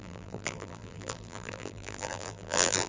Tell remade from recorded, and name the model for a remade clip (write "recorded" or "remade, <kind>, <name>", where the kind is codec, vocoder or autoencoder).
remade, vocoder, BigVGAN v2